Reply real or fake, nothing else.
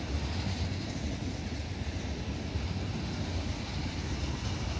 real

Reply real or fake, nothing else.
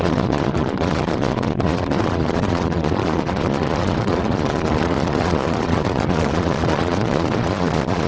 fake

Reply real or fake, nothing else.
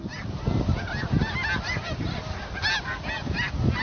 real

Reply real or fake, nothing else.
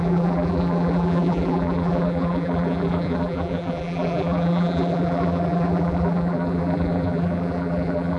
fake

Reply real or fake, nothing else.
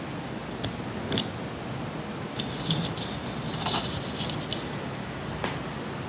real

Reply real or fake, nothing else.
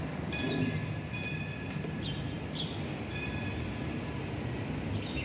real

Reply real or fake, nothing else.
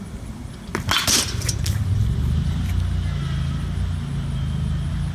real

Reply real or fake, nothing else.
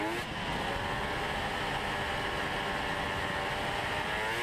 real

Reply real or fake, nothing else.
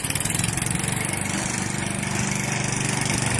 real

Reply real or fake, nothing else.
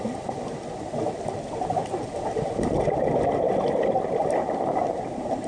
real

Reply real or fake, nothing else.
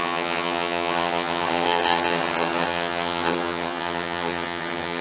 fake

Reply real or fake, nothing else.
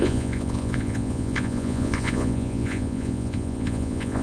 fake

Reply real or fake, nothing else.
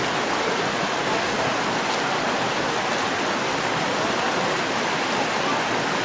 real